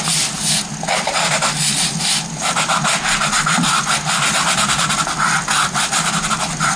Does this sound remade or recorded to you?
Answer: recorded